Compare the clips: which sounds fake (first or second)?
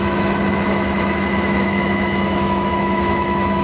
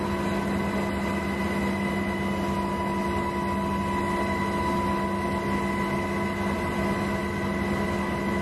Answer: first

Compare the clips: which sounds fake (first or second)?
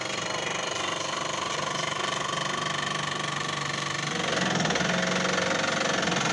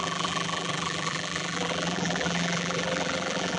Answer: second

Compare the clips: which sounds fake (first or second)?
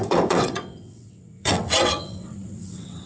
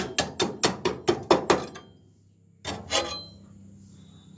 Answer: first